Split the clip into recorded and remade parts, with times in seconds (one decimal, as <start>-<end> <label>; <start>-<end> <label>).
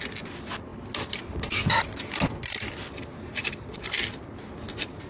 0.0-5.1 recorded